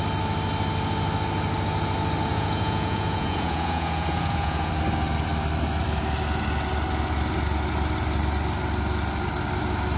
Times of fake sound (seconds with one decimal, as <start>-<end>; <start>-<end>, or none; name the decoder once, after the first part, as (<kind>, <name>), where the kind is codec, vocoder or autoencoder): 2.3-4.7 (vocoder, Vocos)